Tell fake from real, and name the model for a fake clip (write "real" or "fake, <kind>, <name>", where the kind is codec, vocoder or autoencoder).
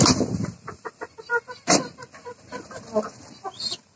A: real